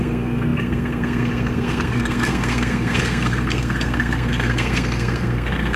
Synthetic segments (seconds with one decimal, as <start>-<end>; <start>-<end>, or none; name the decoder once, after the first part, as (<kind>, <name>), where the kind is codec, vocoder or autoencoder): 0.0-5.8 (codec, SNAC)